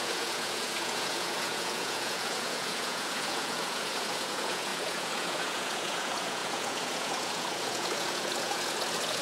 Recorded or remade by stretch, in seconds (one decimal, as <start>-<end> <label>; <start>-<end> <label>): 0.0-9.2 remade